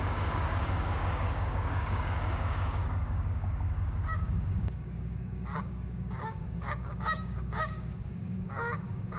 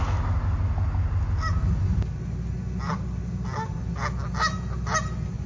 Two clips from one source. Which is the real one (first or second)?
second